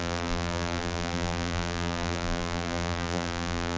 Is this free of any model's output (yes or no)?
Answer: no